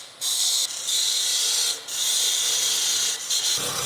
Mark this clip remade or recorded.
recorded